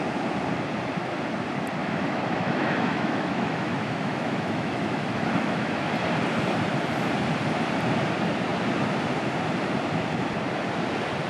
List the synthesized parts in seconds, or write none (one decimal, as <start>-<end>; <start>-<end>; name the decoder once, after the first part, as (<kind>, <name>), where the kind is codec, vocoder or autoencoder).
1.8-5.9 (autoencoder, DAC-VAE)